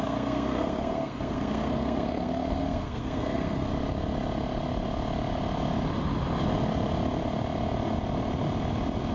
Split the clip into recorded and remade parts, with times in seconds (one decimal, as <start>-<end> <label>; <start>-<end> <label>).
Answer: 0.0-3.7 remade; 3.7-9.1 recorded